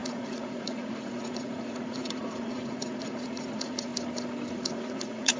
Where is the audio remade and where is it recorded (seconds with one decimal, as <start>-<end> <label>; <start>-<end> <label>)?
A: 0.0-3.9 remade; 3.9-4.5 recorded; 4.5-5.4 remade